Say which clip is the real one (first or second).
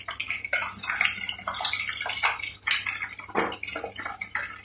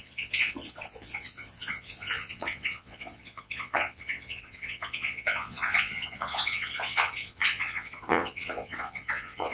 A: first